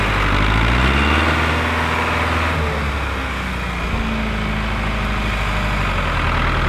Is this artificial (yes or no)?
no